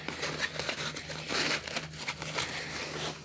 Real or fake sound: real